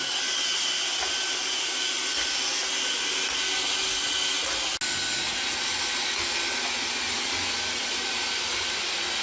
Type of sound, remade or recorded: recorded